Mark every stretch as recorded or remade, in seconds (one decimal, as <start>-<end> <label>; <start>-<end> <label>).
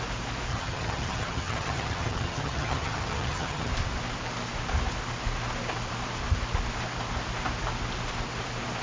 0.0-0.5 recorded; 0.5-3.7 remade; 3.7-8.8 recorded